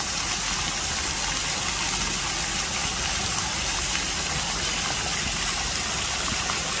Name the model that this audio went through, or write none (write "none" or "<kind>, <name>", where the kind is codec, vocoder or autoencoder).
none